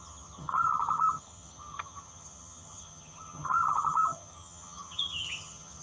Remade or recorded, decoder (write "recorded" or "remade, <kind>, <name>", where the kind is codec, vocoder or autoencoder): remade, vocoder, HiFi-GAN